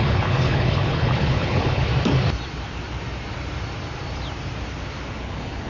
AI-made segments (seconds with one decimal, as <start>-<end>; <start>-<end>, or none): 0.0-1.9; 5.1-5.7